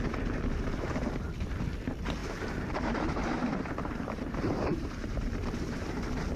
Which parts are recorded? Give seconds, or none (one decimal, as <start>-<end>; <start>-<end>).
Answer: 0.0-0.7; 1.3-2.2; 6.0-6.4